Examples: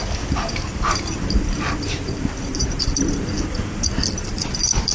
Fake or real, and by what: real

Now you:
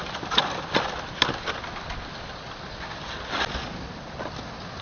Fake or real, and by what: real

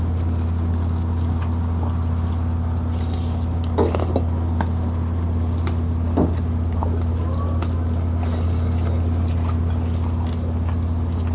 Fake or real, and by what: real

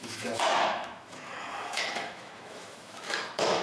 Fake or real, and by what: fake, autoencoder, DAC-VAE